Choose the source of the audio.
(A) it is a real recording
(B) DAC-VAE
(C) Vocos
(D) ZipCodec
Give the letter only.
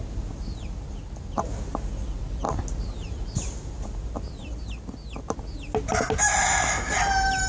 A